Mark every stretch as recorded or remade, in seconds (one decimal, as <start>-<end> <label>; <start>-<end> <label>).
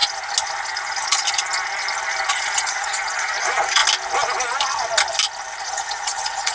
0.0-2.3 recorded; 2.3-3.8 remade; 3.8-5.6 recorded; 5.6-6.5 remade